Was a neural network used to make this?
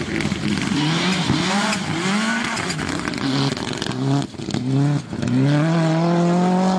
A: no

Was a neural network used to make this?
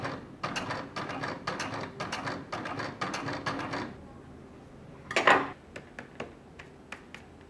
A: no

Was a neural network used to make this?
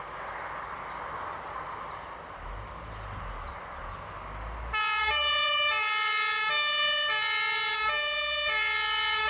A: no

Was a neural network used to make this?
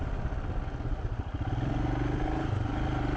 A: no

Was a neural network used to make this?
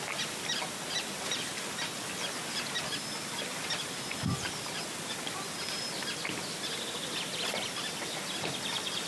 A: no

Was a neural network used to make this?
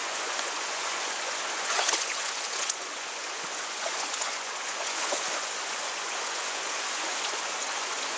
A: yes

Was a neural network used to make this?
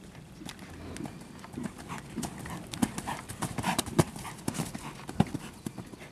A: no